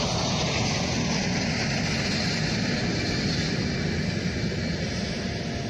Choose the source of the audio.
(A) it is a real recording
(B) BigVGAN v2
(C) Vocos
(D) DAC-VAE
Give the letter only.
A